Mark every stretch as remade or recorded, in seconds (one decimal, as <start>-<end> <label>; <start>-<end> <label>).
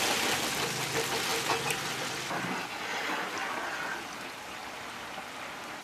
0.0-5.8 recorded